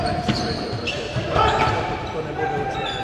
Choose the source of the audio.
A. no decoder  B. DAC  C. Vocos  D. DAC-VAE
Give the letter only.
A